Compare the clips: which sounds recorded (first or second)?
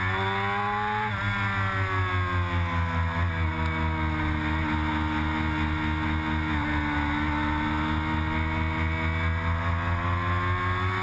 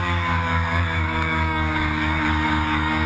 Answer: first